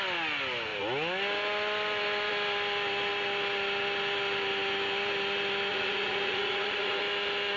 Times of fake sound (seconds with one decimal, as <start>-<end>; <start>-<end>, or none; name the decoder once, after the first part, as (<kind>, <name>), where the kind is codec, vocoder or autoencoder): 5.7-7.0 (vocoder, Vocos)